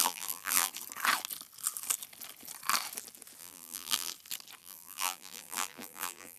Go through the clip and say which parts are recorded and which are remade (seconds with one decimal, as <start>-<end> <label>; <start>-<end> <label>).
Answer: 0.0-0.7 remade; 0.7-3.4 recorded; 3.4-4.1 remade; 4.1-4.6 recorded; 4.6-6.4 remade